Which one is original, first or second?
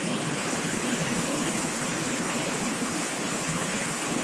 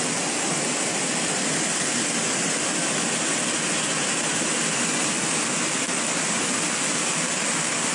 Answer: second